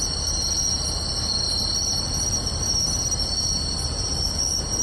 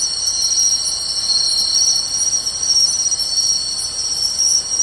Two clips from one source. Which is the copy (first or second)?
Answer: first